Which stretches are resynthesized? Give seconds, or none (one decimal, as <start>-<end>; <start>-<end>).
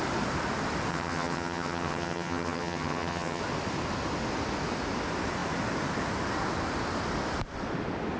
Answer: 0.9-3.4